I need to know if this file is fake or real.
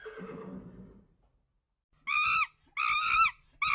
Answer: real